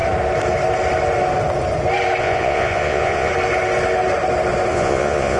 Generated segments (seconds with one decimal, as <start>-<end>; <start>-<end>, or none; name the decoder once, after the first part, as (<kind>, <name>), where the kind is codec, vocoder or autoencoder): 2.2-3.3 (vocoder, Vocos); 4.7-5.4